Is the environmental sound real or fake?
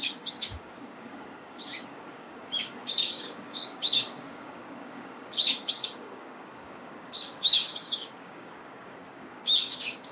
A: fake